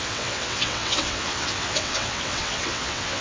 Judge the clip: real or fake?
fake